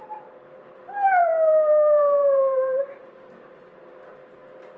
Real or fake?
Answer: fake